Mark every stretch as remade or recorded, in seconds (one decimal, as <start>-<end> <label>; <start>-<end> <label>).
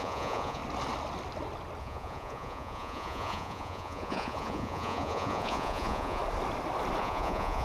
0.0-0.6 remade; 0.6-1.8 recorded; 1.8-6.2 remade; 6.2-7.0 recorded; 7.0-7.6 remade